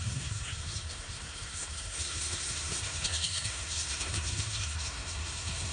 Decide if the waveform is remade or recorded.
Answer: remade